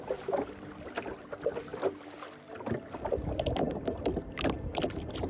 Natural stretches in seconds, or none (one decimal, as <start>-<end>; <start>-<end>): 0.0-5.3